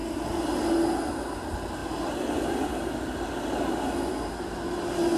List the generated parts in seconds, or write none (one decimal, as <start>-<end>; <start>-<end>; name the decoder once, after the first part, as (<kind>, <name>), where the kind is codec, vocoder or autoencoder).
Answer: none